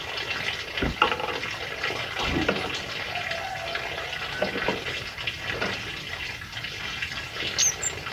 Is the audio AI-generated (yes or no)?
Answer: no